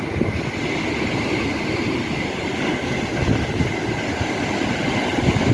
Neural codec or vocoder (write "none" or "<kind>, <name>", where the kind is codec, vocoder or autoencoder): none